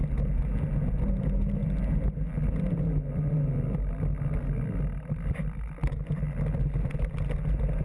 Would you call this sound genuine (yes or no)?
yes